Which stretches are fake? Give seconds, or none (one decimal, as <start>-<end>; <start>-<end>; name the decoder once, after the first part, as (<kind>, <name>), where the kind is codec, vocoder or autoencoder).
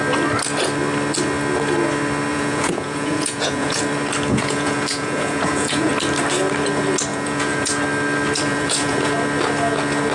2.3-3.8 (vocoder, Vocos); 4.3-5.9; 7.1-7.8; 8.5-9.1